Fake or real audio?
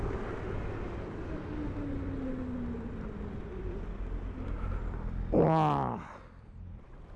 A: real